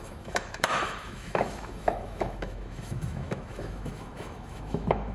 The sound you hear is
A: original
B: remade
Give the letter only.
B